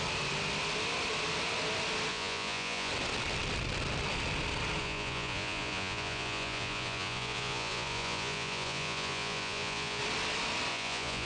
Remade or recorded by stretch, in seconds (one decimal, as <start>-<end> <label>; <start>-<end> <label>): 0.0-2.1 recorded; 2.1-2.9 remade; 2.9-4.8 recorded; 4.8-10.0 remade; 10.0-10.7 recorded; 10.7-11.3 remade